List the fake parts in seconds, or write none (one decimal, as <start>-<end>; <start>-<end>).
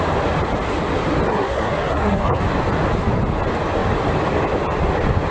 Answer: 1.3-2.4